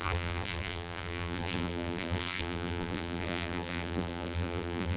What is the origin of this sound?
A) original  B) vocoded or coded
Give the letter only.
B